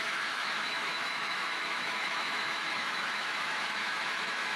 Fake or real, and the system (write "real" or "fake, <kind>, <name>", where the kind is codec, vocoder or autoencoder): fake, autoencoder, DAC-VAE